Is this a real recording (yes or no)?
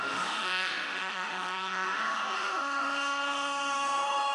no